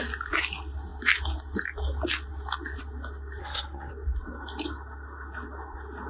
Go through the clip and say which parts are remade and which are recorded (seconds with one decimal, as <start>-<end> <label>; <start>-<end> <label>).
0.0-3.4 recorded; 3.4-3.9 remade; 3.9-6.1 recorded